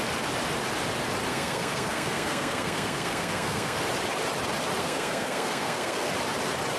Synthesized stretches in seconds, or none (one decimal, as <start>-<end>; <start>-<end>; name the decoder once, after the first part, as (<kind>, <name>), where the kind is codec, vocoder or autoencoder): 1.3-3.8 (codec, SNAC); 4.8-6.1